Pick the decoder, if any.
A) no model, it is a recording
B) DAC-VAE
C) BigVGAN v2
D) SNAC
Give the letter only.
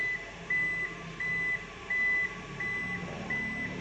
A